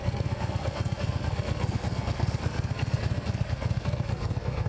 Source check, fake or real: fake